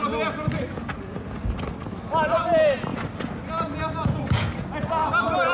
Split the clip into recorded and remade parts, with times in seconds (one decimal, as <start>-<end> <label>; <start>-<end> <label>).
0.0-5.5 recorded